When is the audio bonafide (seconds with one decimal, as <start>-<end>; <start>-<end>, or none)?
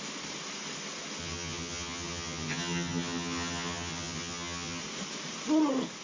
0.0-1.2; 4.8-6.0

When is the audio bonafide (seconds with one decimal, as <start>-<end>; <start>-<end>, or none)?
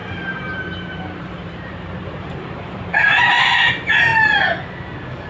3.2-5.3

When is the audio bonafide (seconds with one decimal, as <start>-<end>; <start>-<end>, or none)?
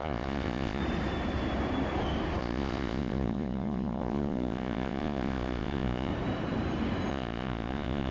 0.8-2.4; 6.1-7.1